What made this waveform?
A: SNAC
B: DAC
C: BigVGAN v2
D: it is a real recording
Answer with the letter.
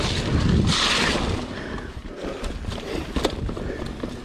D